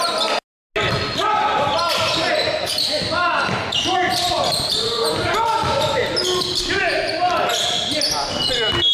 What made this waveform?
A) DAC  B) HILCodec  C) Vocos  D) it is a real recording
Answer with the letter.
D